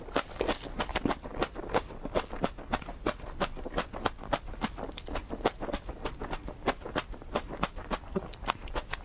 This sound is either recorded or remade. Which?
recorded